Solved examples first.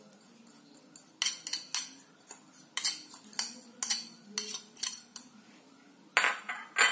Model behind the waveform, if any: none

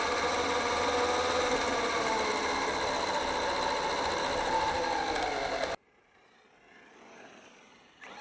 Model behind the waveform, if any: none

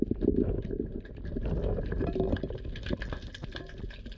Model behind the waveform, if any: none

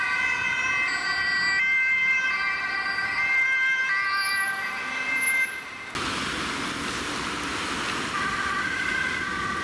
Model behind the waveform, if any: none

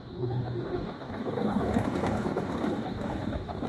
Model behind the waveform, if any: codec, DAC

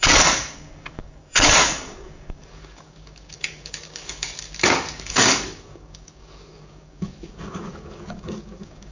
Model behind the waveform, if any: codec, DAC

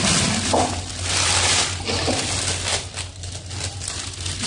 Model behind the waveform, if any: none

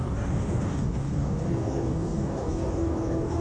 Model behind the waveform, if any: codec, DAC